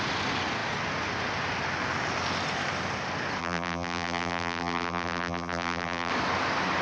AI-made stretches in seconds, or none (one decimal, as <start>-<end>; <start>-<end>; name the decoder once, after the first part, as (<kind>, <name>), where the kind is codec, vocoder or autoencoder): 3.4-6.1 (vocoder, BigVGAN v2)